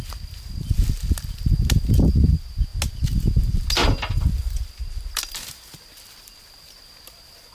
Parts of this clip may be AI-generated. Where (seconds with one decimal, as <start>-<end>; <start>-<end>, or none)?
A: none